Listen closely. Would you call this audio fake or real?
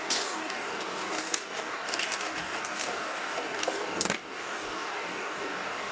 fake